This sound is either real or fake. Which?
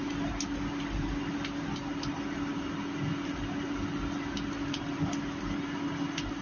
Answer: real